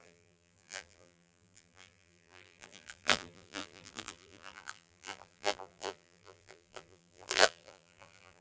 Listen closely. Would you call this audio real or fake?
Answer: fake